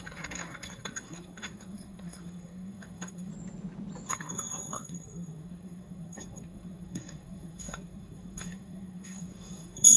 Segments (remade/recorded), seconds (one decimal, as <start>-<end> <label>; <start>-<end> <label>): 0.0-3.3 remade; 3.3-4.1 recorded; 4.1-10.0 remade